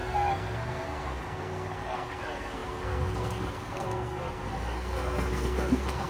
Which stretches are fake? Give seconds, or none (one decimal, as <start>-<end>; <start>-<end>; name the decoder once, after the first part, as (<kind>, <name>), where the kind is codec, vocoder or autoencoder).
0.0-6.1 (codec, SNAC)